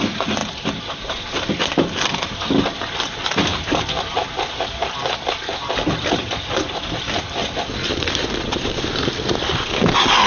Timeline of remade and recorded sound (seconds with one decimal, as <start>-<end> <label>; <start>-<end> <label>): 0.0-0.4 remade; 0.4-1.1 recorded; 1.1-10.3 remade